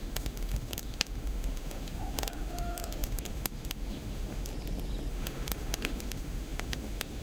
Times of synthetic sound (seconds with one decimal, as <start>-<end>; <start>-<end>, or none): 0.0-4.5; 5.1-7.2